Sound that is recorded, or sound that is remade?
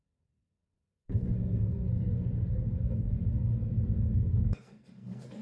remade